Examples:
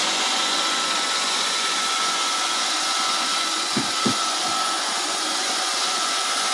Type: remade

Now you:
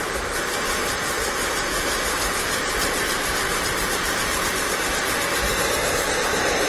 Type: remade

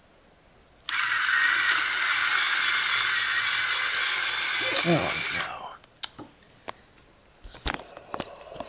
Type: recorded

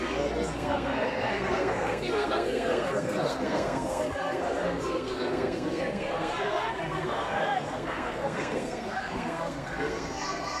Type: remade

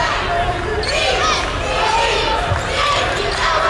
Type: recorded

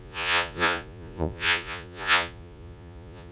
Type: remade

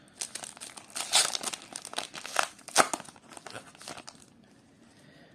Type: recorded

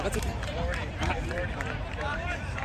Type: remade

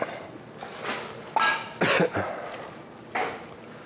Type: recorded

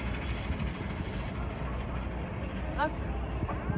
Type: recorded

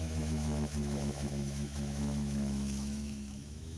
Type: remade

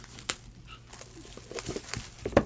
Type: recorded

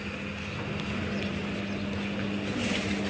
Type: recorded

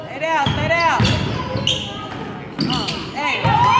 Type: recorded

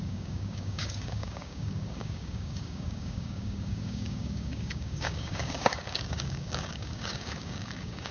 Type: remade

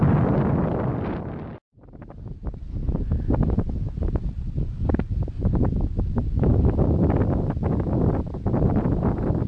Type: recorded